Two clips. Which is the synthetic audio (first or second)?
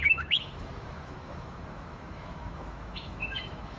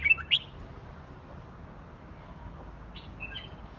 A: first